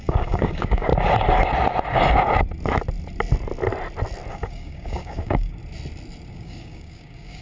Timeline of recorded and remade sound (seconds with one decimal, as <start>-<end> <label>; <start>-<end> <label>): 0.0-0.9 remade; 0.9-4.3 recorded; 4.3-5.6 remade; 5.6-6.3 recorded; 6.3-7.4 remade